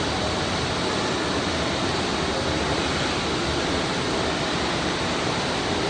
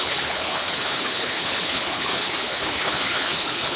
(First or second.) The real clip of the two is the first